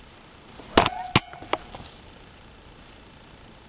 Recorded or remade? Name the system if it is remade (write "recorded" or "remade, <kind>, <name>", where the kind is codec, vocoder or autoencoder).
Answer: recorded